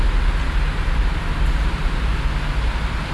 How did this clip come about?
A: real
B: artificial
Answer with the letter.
A